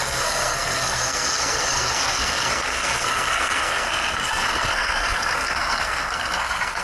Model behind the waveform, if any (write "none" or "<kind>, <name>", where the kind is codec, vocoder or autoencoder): codec, SNAC